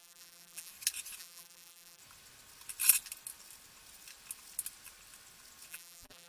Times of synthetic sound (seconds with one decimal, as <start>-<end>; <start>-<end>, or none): 0.0-0.7; 1.2-2.0; 5.7-6.3